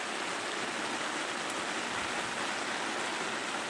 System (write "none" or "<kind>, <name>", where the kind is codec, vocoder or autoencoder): none